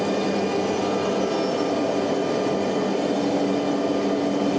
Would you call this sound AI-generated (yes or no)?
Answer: no